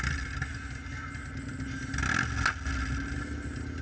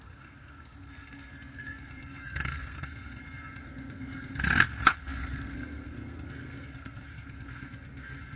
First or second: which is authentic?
first